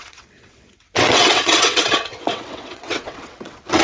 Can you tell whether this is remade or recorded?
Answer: remade